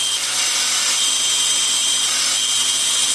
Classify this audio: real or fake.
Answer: real